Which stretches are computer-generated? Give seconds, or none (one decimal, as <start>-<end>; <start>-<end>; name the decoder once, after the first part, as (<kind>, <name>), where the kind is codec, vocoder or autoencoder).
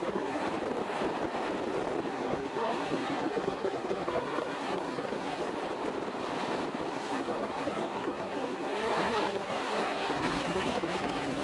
0.0-0.4 (codec, SNAC); 2.1-5.4; 6.9-11.4